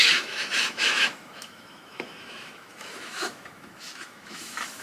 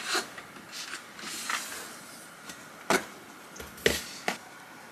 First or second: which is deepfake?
first